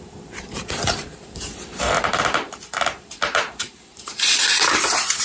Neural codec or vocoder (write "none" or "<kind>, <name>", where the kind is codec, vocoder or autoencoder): vocoder, BigVGAN v2